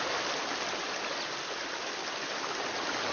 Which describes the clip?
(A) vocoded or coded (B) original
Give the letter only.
B